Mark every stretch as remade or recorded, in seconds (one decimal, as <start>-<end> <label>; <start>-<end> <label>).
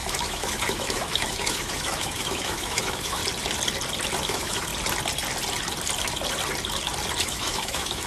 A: 0.0-3.2 remade; 3.2-4.2 recorded; 4.2-4.7 remade; 4.7-7.2 recorded; 7.2-8.1 remade